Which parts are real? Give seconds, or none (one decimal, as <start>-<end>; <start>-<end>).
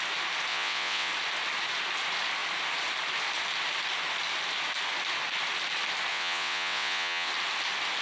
0.0-0.5; 1.1-6.1; 7.3-8.0